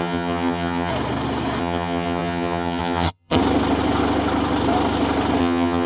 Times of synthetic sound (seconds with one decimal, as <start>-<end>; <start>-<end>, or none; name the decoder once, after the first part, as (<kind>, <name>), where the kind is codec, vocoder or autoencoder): 0.0-0.9 (vocoder, HiFi-GAN); 1.6-3.4; 5.4-5.9